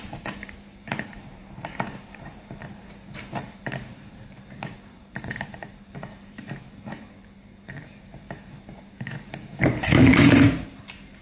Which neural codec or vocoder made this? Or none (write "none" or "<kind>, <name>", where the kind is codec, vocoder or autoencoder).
vocoder, BigVGAN v2